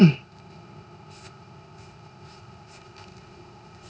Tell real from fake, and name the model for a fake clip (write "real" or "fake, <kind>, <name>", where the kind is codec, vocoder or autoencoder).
fake, codec, ZipCodec